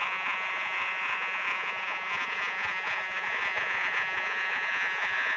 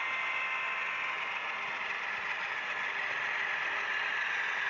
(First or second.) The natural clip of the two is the second